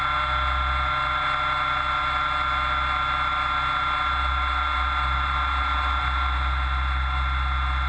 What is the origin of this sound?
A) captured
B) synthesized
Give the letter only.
A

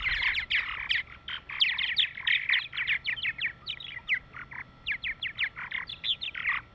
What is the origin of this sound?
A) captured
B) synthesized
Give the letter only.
A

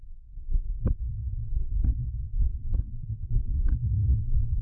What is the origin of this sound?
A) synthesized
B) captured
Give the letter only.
A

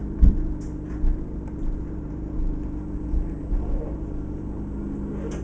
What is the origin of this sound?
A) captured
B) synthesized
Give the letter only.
A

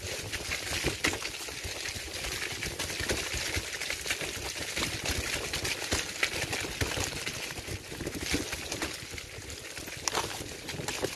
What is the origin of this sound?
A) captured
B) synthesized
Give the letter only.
A